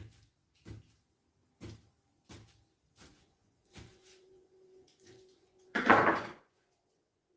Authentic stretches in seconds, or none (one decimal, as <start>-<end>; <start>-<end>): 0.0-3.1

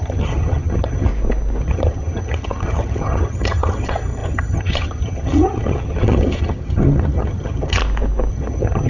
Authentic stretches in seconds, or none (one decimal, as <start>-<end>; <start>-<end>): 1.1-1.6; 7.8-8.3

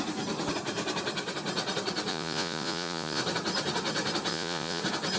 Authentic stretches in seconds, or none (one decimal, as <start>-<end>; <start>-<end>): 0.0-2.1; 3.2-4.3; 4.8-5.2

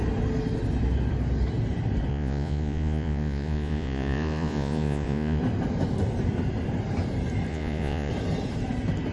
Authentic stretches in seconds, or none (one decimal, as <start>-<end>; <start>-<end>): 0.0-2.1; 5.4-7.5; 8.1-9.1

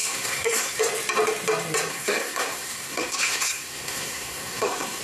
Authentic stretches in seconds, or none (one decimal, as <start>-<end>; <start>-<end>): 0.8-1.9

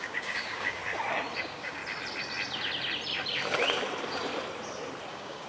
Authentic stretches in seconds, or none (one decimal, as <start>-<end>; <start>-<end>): 0.8-1.4; 1.8-5.1

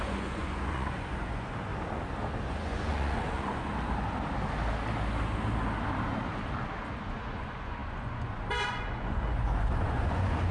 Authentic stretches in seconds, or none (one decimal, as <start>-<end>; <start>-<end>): 1.7-2.5; 3.7-7.1